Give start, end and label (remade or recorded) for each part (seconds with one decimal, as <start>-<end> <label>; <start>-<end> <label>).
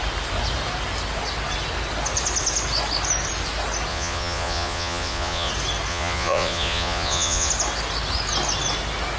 0.0-3.9 recorded; 3.9-5.5 remade; 5.5-5.9 recorded; 5.9-7.5 remade; 7.5-9.2 recorded